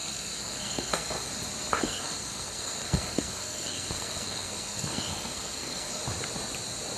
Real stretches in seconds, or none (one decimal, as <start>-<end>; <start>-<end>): 1.3-1.8; 6.0-7.0

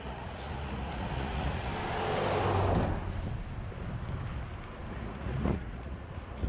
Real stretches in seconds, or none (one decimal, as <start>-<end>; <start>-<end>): 1.7-4.9

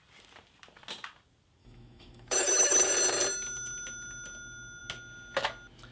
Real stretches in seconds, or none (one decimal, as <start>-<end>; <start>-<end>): 0.0-1.6; 2.9-5.9

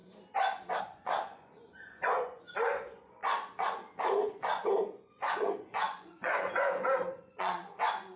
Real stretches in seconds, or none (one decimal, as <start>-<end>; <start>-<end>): 0.0-0.8

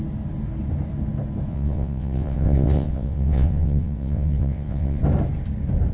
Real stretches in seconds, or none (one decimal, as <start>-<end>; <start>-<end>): 0.0-1.5; 5.0-5.9

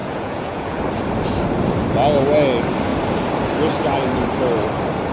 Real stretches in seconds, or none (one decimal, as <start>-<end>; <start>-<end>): 0.8-5.1

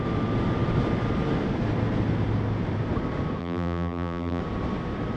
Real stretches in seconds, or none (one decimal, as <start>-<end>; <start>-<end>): 0.0-3.4; 4.4-5.2

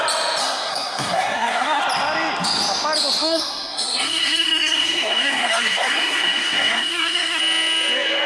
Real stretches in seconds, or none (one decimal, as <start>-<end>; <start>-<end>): 0.0-0.4; 1.8-3.2; 7.4-8.3